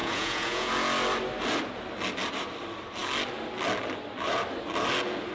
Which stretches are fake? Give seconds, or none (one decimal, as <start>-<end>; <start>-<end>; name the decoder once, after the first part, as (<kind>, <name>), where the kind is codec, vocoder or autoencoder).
0.0-0.7 (vocoder, Vocos)